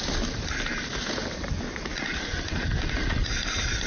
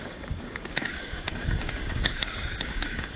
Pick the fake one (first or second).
second